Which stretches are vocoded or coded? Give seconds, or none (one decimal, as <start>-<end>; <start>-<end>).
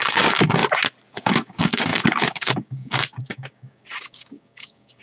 0.0-0.6; 1.1-5.0